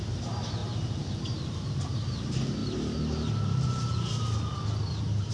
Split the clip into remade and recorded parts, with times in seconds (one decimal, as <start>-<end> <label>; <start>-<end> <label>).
0.0-2.6 remade; 2.6-5.3 recorded